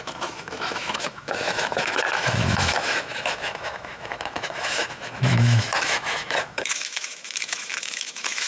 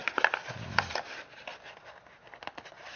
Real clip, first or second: second